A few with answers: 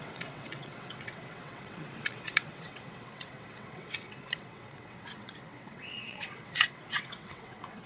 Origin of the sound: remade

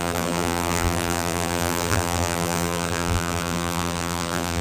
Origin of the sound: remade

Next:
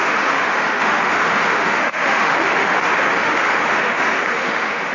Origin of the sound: remade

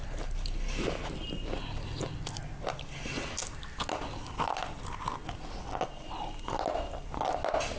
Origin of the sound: recorded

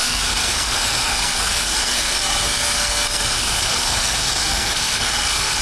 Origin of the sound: remade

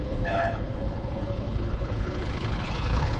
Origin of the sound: remade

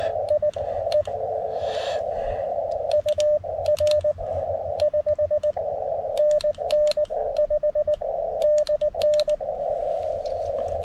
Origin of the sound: recorded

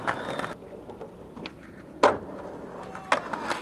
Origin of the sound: remade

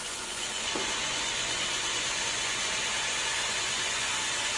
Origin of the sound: remade